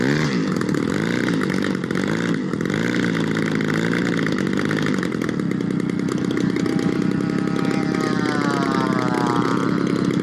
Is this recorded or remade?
remade